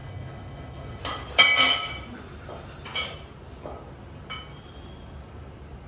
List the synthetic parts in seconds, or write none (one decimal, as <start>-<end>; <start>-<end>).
0.0-1.0